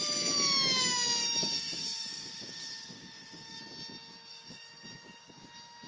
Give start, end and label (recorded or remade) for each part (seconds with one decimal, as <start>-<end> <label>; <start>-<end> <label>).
0.0-1.2 recorded; 1.2-3.6 remade; 3.6-4.3 recorded; 4.3-5.3 remade; 5.3-5.9 recorded